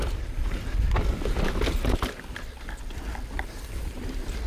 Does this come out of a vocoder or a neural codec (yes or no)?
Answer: yes